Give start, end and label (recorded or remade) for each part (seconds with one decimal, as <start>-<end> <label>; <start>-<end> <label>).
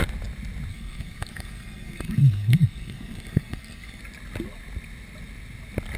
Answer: 0.0-0.7 recorded; 0.7-4.0 remade; 4.0-6.0 recorded